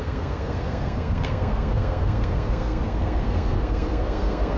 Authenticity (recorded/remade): remade